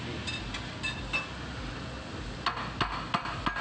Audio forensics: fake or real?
real